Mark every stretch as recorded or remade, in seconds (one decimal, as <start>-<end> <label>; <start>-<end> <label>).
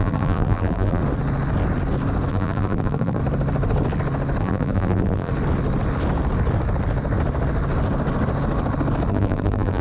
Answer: 0.0-1.0 remade; 1.0-2.3 recorded; 2.3-3.2 remade; 3.2-4.4 recorded; 4.4-5.3 remade; 5.3-9.1 recorded; 9.1-9.8 remade